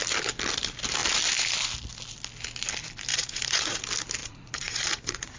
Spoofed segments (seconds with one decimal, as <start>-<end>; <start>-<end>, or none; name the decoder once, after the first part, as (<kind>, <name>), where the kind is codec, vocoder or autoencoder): 3.1-3.8 (vocoder, Vocos); 4.2-5.4